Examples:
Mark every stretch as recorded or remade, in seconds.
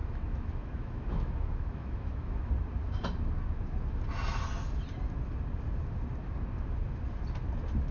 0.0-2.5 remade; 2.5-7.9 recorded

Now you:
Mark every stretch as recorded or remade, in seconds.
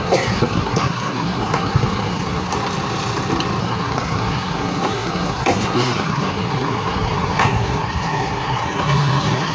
0.0-2.5 remade; 2.5-3.6 recorded; 3.6-9.5 remade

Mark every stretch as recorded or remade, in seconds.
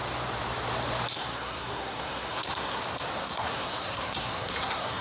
0.0-1.1 recorded; 1.1-2.8 remade; 2.8-3.2 recorded; 3.2-5.0 remade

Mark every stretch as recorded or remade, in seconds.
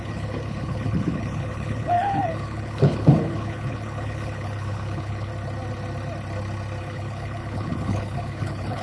0.0-5.3 remade; 5.3-6.8 recorded; 6.8-8.8 remade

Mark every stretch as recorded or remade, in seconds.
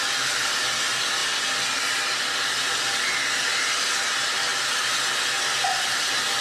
0.0-6.4 recorded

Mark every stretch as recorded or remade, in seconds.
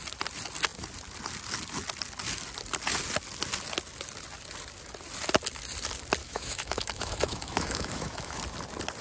0.0-6.2 recorded; 6.2-8.4 remade; 8.4-9.0 recorded